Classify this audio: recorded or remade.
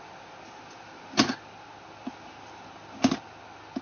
recorded